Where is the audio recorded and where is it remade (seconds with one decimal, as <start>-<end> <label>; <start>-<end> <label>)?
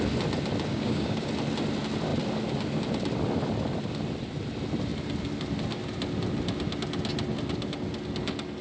0.0-0.7 recorded; 0.7-1.3 remade; 1.3-8.6 recorded